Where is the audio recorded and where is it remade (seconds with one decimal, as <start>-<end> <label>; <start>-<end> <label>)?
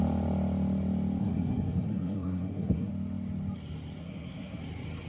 0.0-1.2 recorded; 1.2-2.9 remade; 2.9-4.0 recorded; 4.0-4.6 remade; 4.6-5.1 recorded